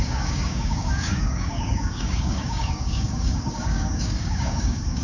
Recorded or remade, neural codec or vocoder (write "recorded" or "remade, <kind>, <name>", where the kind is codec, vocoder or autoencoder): remade, codec, DAC